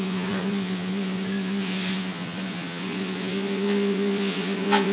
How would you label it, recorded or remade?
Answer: remade